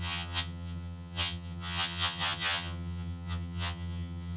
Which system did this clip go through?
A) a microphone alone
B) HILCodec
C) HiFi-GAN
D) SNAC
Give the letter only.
C